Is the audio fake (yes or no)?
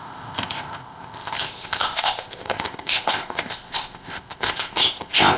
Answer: yes